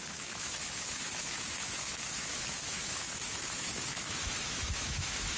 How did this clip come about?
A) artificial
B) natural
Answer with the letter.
A